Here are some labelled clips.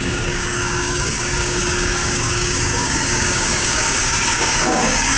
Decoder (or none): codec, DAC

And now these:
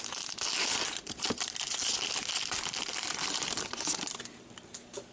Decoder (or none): none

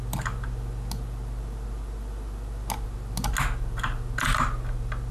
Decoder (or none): none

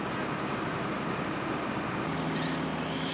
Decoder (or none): none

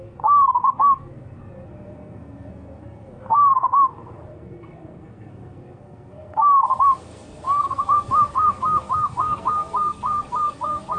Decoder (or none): codec, SNAC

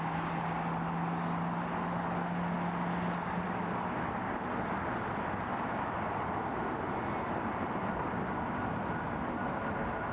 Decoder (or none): none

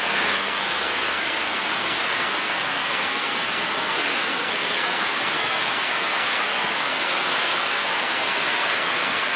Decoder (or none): codec, SNAC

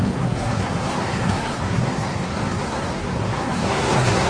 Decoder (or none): codec, SNAC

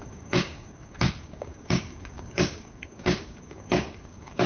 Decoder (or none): codec, DAC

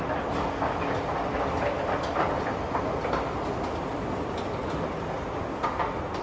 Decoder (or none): none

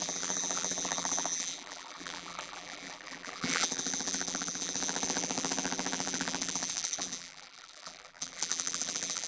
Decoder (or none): vocoder, BigVGAN v2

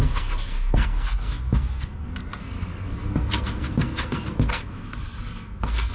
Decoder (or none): codec, SNAC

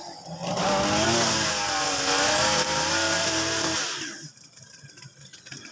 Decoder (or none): none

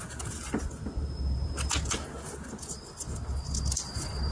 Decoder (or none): none